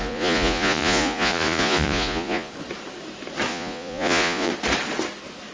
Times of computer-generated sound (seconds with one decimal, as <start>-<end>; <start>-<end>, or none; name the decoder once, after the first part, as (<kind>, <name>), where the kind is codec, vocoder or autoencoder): 0.0-2.5 (vocoder, Vocos); 3.5-4.5